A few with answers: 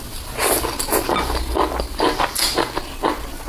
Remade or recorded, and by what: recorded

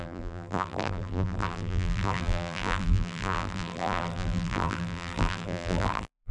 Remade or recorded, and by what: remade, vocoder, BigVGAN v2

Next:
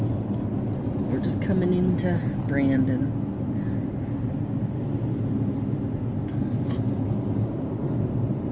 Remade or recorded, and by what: recorded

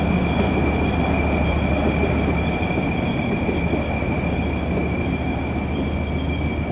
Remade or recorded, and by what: recorded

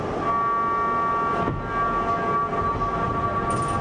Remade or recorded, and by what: recorded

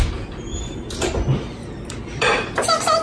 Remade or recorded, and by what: recorded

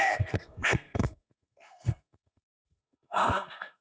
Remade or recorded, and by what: remade, codec, SNAC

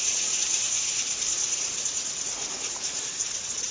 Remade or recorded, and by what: remade, vocoder, Vocos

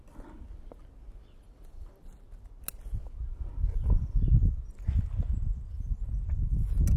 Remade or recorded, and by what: recorded